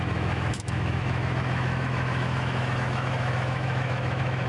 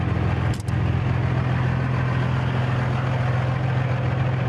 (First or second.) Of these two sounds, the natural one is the second